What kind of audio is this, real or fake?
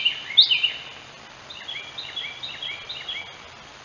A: real